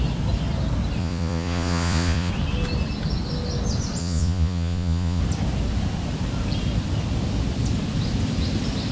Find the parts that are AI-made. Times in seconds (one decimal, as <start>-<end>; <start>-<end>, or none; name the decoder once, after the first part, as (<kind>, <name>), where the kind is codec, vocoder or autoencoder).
1.0-2.3 (vocoder, Vocos); 4.0-5.2